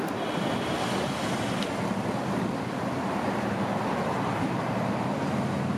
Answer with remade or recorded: recorded